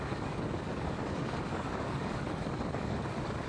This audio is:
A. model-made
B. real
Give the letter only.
A